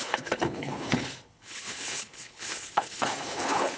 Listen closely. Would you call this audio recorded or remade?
remade